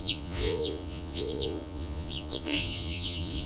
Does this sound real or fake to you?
fake